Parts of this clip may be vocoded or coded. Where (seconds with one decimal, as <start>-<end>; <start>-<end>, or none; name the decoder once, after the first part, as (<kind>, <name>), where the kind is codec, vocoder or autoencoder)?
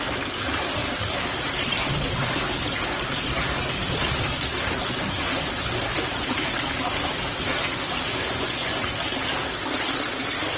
8.1-8.8 (vocoder, Vocos)